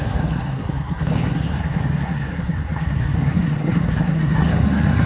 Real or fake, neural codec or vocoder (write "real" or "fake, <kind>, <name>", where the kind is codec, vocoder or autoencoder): fake, codec, SNAC